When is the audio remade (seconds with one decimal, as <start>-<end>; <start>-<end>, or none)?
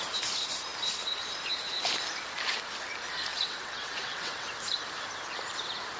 3.3-4.5